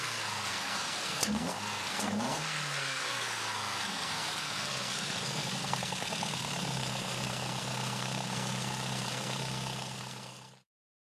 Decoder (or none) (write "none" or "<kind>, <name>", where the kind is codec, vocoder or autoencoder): codec, SNAC